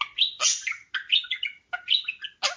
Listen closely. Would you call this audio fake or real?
real